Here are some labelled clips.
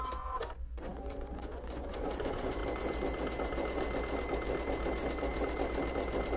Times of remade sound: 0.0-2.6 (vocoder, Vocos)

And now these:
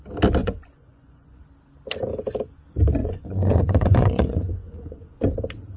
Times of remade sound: 0.4-1.4 (vocoder, Vocos); 3.0-5.2